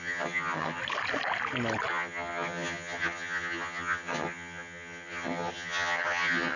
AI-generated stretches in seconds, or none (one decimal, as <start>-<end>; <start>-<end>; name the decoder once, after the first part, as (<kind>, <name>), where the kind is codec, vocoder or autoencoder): 0.0-0.8 (vocoder, HiFi-GAN); 1.9-6.6